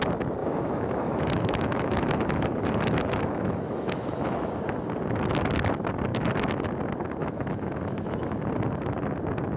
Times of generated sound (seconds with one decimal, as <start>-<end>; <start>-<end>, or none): 0.4-4.5; 7.2-8.4